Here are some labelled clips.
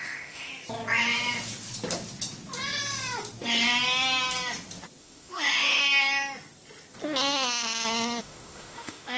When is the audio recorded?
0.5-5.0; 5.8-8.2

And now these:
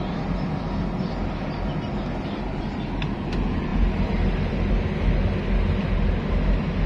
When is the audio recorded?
0.0-6.9

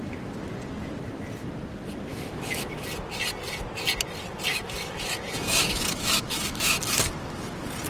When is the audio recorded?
0.0-2.1; 2.7-4.5; 6.8-7.9

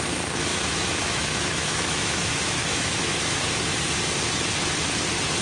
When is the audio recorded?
0.0-0.5; 3.4-5.4

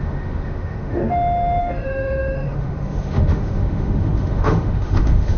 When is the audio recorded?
1.0-1.6

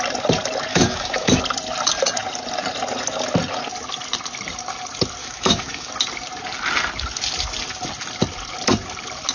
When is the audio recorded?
0.0-0.7; 1.4-5.2; 5.9-9.3

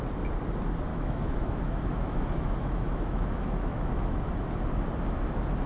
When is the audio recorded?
0.0-0.9; 4.3-5.7

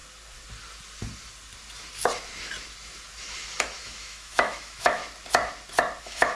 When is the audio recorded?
0.0-3.8; 5.0-6.0